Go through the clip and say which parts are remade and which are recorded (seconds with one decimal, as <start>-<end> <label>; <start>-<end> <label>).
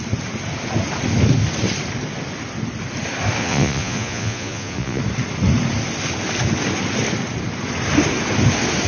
0.0-3.4 recorded; 3.4-5.0 remade; 5.0-8.9 recorded